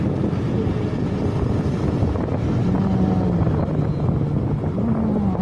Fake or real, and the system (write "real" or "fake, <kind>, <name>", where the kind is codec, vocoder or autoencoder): real